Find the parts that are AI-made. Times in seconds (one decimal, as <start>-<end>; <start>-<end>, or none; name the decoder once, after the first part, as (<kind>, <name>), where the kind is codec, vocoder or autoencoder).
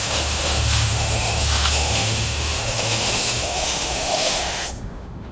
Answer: 0.0-5.3 (autoencoder, DAC-VAE)